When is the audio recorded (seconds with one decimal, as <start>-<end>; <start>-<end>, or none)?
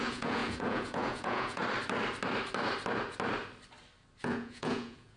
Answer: 1.6-4.2